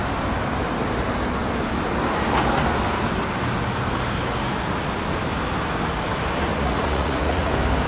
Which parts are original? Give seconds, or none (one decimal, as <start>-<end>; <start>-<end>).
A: 0.0-6.5; 7.5-7.9